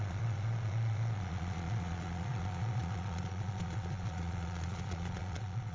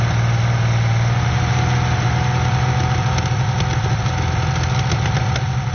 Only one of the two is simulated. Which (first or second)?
first